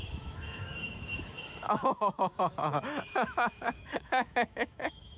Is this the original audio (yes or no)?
no